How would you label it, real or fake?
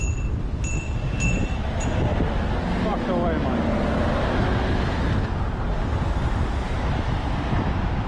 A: real